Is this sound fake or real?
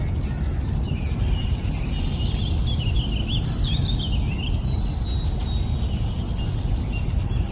real